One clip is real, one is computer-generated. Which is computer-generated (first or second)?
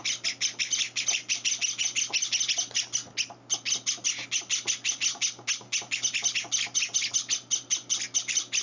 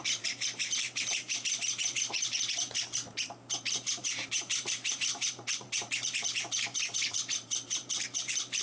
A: second